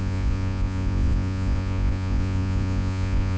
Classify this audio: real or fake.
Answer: fake